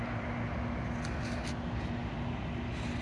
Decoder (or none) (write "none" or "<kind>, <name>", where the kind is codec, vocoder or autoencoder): none